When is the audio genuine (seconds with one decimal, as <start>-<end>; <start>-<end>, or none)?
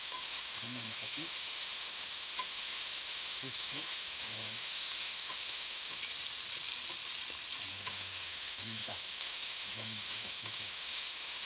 6.0-7.7